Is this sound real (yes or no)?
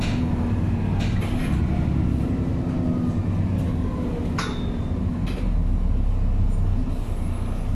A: yes